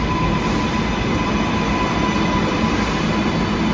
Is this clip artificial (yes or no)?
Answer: no